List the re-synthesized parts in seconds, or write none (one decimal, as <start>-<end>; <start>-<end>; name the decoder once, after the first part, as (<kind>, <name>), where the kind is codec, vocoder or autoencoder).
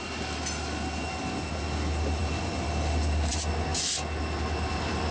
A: none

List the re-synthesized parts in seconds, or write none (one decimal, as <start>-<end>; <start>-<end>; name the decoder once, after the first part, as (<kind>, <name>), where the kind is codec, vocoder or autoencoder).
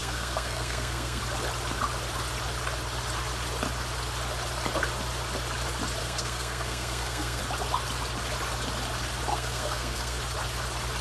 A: 0.0-1.2 (codec, SNAC); 6.0-7.4; 9.3-10.2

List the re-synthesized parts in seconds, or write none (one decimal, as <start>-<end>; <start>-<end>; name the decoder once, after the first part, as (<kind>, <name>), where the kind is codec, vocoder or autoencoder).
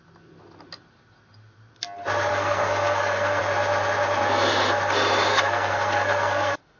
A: 2.3-3.4 (codec, SNAC); 5.3-6.8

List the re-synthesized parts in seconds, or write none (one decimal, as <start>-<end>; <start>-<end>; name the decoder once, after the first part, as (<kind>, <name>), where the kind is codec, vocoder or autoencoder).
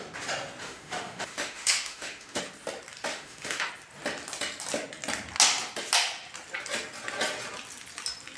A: 0.6-2.4 (autoencoder, DAC-VAE); 3.1-3.7